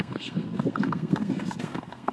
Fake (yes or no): yes